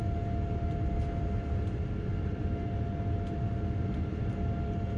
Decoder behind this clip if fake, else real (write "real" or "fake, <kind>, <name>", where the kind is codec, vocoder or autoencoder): real